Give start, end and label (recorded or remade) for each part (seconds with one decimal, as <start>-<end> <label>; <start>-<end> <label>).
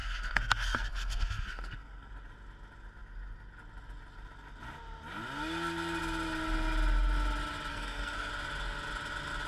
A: 0.0-2.1 remade; 2.1-7.7 recorded; 7.7-8.3 remade; 8.3-9.5 recorded